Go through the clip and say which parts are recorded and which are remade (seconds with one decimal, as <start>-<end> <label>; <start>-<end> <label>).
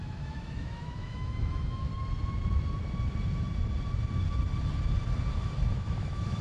0.0-1.9 remade; 1.9-5.7 recorded; 5.7-6.4 remade